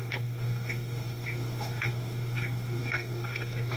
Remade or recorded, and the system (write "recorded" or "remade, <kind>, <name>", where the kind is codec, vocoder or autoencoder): remade, codec, DAC